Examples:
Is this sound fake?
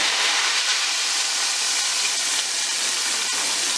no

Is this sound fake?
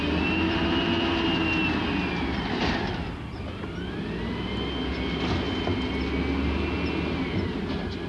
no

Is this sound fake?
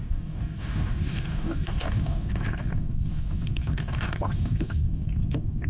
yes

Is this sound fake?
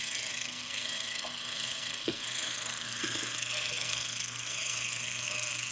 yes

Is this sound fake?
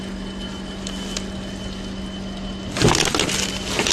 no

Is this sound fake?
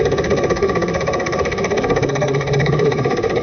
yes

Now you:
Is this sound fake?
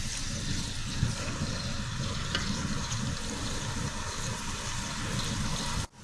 no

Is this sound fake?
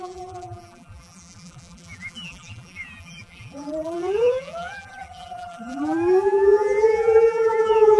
yes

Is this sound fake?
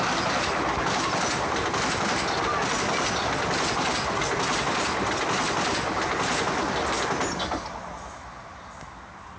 no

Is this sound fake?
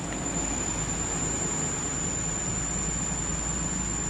no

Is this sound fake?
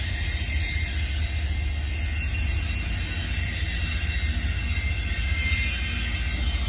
no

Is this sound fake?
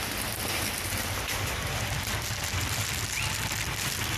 no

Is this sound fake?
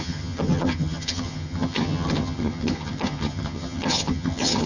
yes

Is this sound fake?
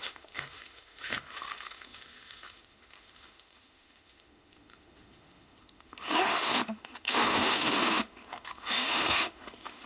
yes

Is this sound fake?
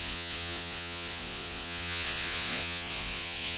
yes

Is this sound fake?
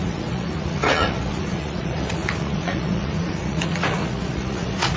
yes